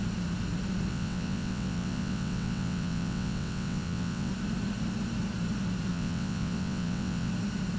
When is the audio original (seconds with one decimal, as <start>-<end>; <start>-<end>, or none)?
0.0-0.9; 4.3-5.9; 7.3-7.8